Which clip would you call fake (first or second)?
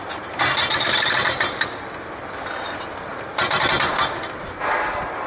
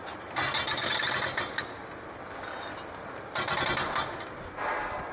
first